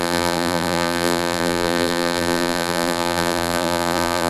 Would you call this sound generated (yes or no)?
yes